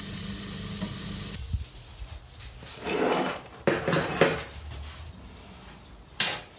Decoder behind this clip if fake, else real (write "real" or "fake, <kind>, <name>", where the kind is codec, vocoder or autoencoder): fake, vocoder, BigVGAN v2